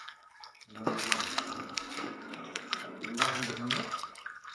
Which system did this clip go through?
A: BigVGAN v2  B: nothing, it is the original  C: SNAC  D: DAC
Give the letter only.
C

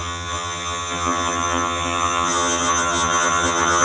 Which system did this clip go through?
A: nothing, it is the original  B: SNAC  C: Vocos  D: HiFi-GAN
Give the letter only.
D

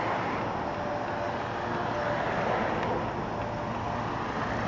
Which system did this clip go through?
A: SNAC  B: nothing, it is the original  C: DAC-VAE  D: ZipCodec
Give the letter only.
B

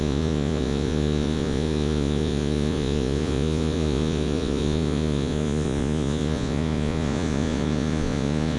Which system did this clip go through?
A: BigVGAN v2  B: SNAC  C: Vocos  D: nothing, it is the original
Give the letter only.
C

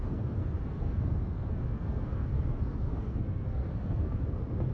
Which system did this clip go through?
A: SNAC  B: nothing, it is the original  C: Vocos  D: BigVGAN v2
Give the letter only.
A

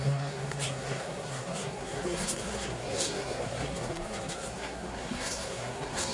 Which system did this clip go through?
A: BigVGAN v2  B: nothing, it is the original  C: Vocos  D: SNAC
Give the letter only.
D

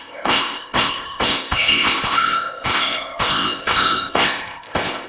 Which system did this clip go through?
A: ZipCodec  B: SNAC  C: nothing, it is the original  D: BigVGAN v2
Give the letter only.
A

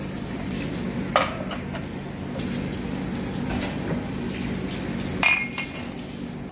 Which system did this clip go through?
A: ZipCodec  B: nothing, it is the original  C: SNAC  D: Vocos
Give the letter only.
B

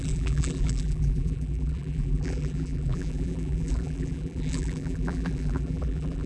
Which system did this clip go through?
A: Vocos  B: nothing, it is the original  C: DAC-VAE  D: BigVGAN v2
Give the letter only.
D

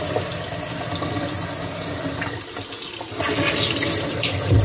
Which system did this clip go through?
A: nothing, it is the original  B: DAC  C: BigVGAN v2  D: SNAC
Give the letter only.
A